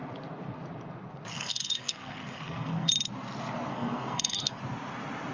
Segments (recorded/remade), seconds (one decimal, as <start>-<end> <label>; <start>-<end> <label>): 0.0-1.3 recorded; 1.3-2.9 remade; 2.9-3.7 recorded; 3.7-4.6 remade; 4.6-5.3 recorded